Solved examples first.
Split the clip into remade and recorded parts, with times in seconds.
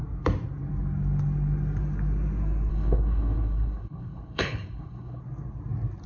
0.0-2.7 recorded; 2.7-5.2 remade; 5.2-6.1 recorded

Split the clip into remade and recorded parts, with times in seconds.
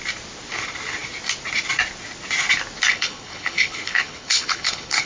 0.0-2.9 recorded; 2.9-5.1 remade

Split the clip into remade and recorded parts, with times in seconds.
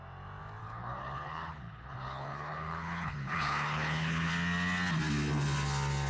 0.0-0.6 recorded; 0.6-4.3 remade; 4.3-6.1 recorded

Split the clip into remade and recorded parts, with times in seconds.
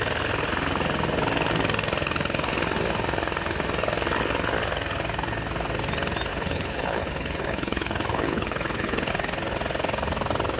0.0-6.3 recorded; 6.3-9.1 remade; 9.1-10.6 recorded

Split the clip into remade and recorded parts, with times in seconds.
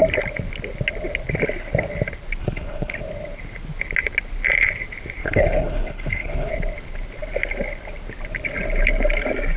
0.0-2.4 recorded; 2.4-3.0 remade; 3.0-5.2 recorded; 5.2-6.5 remade; 6.5-9.6 recorded